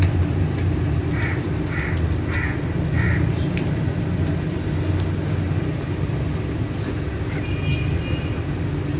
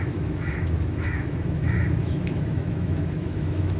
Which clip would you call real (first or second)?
first